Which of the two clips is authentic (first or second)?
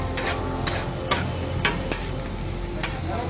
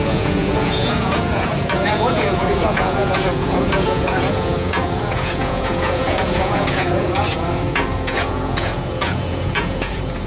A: first